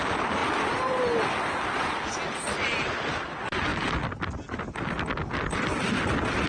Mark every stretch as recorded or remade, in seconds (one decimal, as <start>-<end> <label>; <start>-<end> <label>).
0.0-6.5 recorded